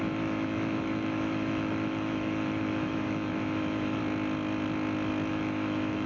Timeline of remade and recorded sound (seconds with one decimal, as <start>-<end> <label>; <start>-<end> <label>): 0.0-4.0 remade; 4.0-5.3 recorded; 5.3-6.1 remade